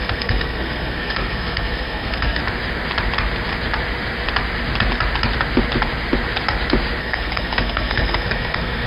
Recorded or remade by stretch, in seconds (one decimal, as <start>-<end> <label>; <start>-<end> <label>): 0.0-2.4 remade; 2.4-7.0 recorded; 7.0-8.9 remade